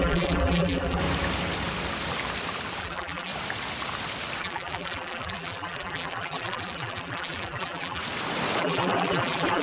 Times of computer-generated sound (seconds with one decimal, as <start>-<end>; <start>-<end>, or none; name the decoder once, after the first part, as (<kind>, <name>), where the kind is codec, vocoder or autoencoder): 0.0-1.0 (vocoder, BigVGAN v2); 2.8-3.3; 4.4-8.0; 8.6-9.6